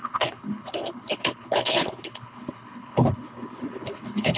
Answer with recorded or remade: remade